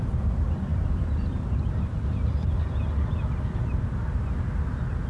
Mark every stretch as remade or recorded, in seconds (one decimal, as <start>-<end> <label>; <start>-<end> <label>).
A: 0.0-5.1 recorded

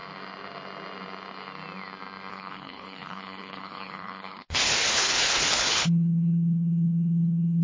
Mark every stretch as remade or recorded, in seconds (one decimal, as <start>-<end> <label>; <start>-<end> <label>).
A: 0.0-2.3 recorded; 2.3-7.6 remade

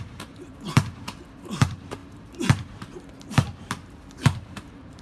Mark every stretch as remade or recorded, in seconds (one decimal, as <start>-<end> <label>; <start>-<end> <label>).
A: 0.0-5.0 remade